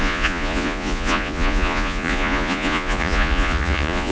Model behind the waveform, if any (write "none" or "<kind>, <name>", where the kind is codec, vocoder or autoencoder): vocoder, Vocos